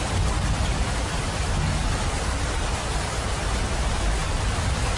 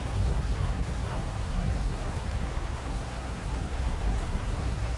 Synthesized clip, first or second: second